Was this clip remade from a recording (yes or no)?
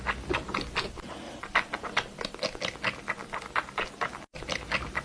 no